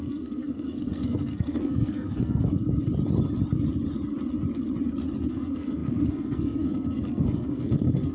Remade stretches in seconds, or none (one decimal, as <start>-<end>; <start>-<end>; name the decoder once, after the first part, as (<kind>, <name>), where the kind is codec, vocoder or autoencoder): 0.0-2.6 (codec, SNAC); 5.3-8.1